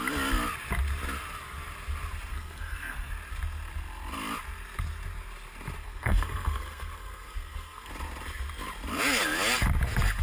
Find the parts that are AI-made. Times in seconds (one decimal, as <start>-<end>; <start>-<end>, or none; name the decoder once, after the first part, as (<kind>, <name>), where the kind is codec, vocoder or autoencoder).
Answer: 2.3-3.1 (codec, SNAC); 5.8-7.9